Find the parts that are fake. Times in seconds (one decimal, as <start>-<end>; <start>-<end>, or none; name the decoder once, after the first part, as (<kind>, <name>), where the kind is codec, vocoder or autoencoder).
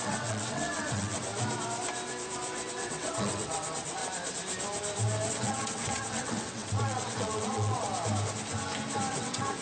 0.0-1.3 (vocoder, WaveNeXt); 2.7-4.0; 5.3-7.9; 9.1-9.6